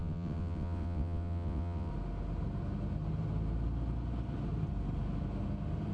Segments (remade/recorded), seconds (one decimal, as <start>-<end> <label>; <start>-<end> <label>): 0.0-1.9 remade; 1.9-5.9 recorded